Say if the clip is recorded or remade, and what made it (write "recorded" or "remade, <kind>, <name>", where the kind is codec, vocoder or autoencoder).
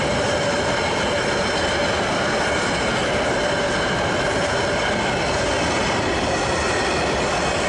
recorded